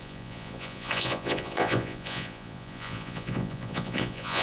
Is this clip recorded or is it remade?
remade